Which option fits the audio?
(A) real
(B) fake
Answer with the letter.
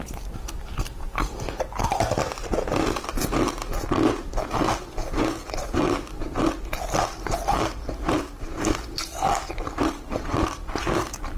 A